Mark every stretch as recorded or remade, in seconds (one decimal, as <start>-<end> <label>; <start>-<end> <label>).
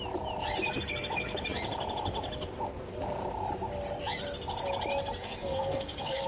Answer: 0.0-5.2 recorded; 5.2-6.3 remade